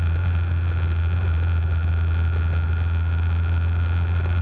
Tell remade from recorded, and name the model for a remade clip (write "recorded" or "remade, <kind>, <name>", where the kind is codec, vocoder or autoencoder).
recorded